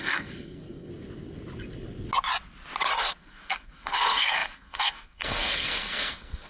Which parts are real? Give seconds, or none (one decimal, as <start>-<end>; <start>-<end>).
0.9-3.0